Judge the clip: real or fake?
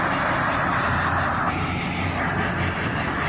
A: real